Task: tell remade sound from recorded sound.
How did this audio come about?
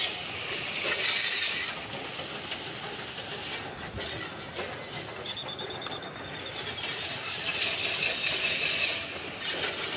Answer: recorded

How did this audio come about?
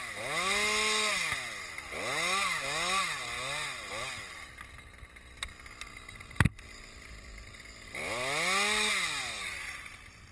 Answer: recorded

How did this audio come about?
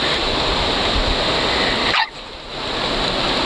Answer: recorded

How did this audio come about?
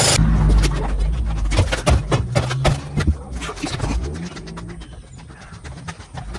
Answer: recorded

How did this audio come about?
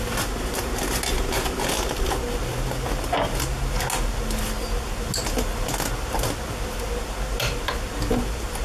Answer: recorded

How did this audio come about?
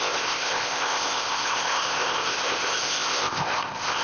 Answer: remade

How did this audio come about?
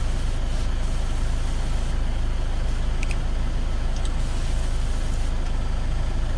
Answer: recorded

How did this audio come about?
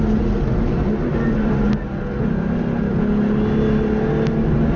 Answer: recorded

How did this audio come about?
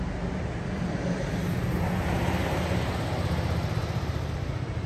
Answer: recorded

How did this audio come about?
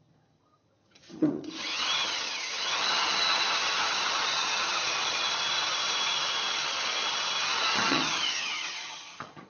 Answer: remade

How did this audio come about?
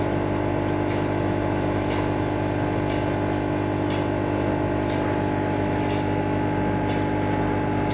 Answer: recorded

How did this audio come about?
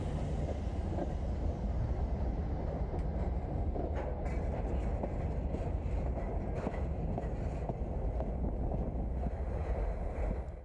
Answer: recorded